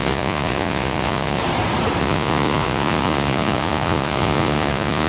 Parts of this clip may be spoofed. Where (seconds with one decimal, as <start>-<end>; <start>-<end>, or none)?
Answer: 0.0-1.4; 2.0-5.1